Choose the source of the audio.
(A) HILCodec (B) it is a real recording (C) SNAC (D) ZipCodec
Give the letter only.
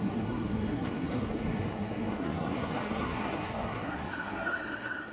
C